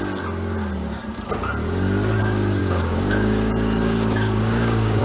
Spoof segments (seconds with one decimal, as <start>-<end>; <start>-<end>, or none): 2.6-5.0